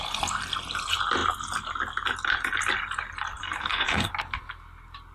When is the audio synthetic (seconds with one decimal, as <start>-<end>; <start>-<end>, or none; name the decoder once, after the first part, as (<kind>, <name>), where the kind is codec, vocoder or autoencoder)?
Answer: 3.4-4.1 (codec, SNAC)